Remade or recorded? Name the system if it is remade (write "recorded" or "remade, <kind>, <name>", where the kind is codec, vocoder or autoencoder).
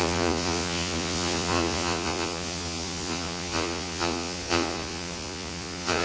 remade, vocoder, Vocos